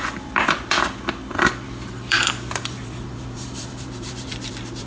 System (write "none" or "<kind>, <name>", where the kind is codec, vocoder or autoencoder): vocoder, BigVGAN v2